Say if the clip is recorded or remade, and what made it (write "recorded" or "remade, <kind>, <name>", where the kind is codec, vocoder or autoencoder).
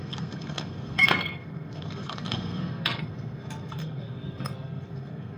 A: remade, codec, SNAC